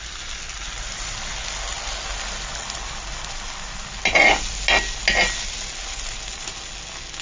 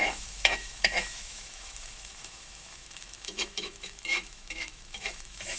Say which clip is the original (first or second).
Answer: first